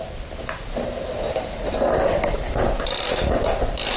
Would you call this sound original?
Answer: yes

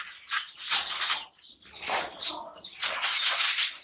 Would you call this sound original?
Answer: yes